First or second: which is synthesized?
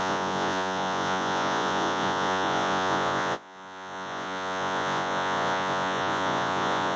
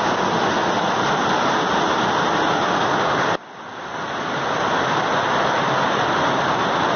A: first